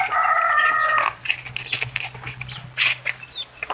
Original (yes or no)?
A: yes